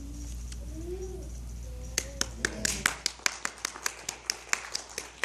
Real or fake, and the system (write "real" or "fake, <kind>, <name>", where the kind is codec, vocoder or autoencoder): real